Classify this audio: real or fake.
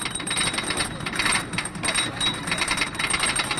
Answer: real